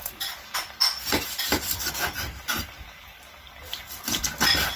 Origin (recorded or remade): recorded